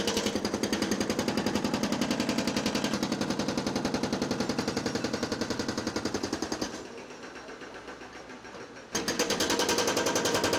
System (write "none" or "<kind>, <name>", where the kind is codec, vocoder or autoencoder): none